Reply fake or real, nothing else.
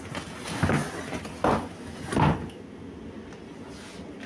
real